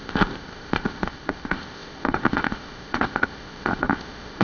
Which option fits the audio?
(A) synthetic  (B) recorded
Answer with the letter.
A